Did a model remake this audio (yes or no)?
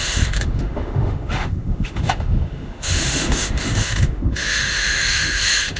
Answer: yes